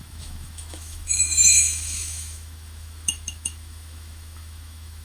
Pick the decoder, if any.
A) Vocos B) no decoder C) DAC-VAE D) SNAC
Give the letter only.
C